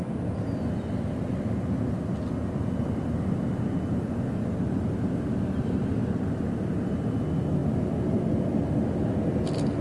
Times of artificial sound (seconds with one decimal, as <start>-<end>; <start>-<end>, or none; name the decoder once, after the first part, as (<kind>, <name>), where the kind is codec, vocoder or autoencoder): none